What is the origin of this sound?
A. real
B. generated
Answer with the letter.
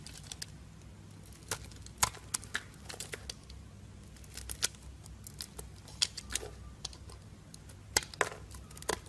A